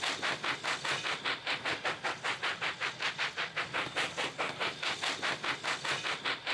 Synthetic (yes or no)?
no